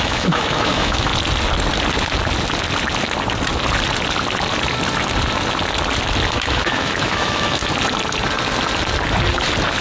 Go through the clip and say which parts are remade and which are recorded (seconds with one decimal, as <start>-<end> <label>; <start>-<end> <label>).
0.0-1.1 remade; 1.1-6.3 recorded; 6.3-7.6 remade; 7.6-9.8 recorded